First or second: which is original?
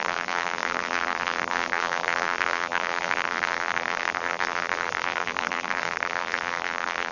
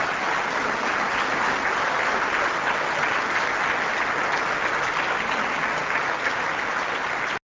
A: second